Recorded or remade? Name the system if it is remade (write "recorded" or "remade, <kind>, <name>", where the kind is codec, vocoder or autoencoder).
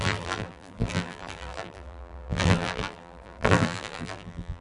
remade, vocoder, BigVGAN v2